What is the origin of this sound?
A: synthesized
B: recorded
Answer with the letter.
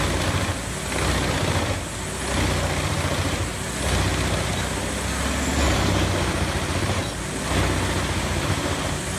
B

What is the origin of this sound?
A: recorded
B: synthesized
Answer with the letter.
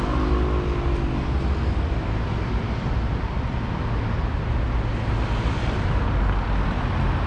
A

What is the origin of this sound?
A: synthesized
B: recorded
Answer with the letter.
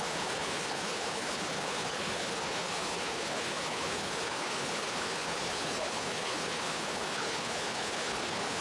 A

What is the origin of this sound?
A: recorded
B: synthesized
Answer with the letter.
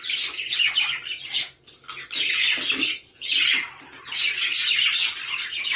B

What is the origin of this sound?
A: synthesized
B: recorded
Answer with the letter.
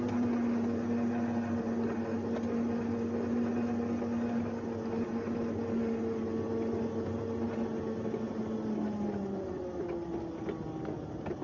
B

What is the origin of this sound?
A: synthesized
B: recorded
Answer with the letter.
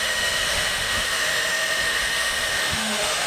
A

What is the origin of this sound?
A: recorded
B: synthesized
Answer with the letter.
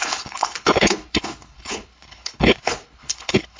B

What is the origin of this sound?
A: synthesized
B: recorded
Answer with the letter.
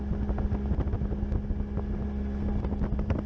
B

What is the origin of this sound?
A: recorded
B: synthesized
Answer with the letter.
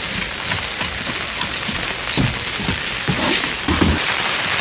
A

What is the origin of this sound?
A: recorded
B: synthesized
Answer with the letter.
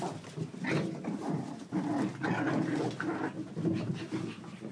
A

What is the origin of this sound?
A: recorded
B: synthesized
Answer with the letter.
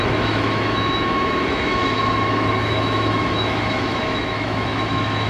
B